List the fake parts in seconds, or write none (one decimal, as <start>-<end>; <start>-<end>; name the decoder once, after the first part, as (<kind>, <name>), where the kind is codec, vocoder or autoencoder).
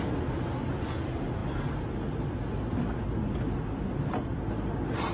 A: none